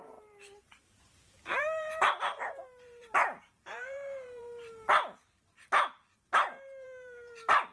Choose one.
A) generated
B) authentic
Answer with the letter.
A